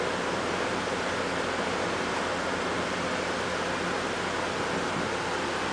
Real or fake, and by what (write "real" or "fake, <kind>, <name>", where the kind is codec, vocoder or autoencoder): real